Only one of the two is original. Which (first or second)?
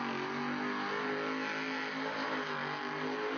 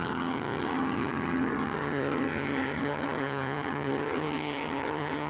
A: first